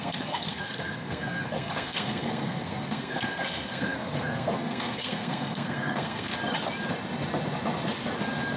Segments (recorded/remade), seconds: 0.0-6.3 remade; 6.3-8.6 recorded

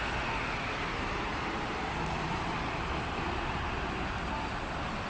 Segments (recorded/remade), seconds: 0.0-1.3 recorded; 1.3-3.6 remade; 3.6-5.1 recorded

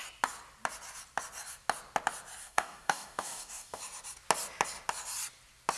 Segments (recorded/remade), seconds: 0.0-2.4 recorded; 2.4-3.8 remade; 3.8-5.8 recorded

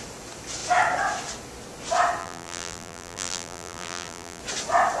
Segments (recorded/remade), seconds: 0.0-2.2 recorded; 2.2-4.4 remade; 4.4-5.0 recorded

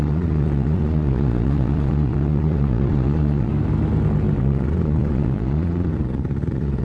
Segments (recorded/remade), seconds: 0.0-3.5 remade; 3.5-4.4 recorded; 4.4-6.8 remade